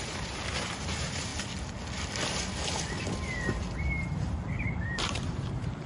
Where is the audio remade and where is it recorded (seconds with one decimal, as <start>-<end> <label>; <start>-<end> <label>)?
0.0-1.3 remade; 1.3-4.0 recorded; 4.0-5.9 remade